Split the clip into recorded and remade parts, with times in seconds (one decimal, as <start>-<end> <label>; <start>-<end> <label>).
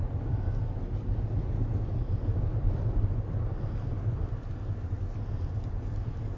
0.0-6.4 recorded